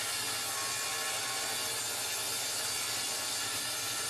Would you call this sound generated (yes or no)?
no